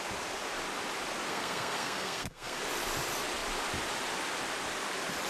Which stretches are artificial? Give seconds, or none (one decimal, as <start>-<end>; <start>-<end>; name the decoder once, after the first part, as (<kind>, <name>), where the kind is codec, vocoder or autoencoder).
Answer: 1.3-2.6 (codec, SNAC)